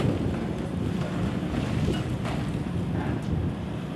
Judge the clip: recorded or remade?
recorded